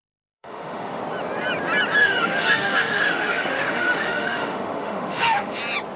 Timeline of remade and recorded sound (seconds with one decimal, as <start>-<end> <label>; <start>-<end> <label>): 0.0-1.0 remade; 1.0-2.0 recorded; 2.0-5.6 remade; 5.6-6.0 recorded